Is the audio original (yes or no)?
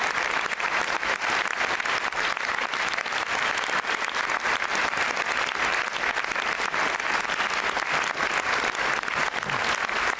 yes